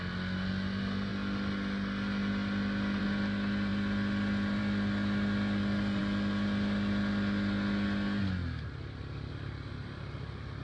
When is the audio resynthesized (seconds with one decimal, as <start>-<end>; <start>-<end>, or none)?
none